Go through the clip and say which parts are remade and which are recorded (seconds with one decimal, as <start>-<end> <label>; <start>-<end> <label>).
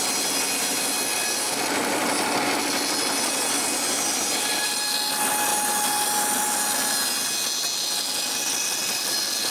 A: 0.0-9.5 recorded